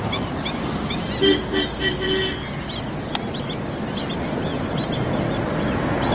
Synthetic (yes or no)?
no